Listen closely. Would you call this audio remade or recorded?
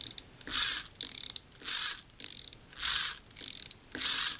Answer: recorded